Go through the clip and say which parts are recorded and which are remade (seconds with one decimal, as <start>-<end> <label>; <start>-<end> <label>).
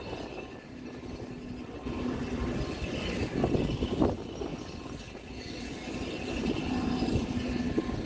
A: 0.0-8.1 recorded